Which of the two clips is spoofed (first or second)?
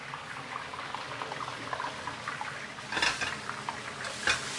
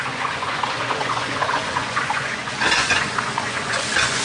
second